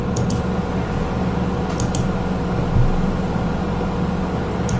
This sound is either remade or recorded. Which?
recorded